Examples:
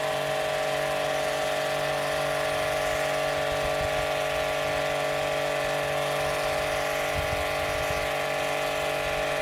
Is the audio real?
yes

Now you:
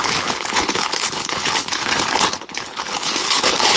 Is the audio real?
no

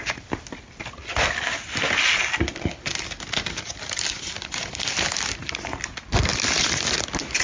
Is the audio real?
yes